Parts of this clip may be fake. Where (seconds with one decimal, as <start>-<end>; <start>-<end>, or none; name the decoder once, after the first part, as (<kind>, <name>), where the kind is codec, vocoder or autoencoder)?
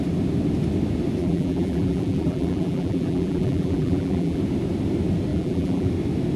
1.2-4.4 (vocoder, BigVGAN v2); 5.3-5.9